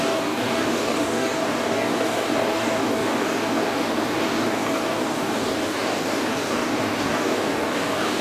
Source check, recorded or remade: remade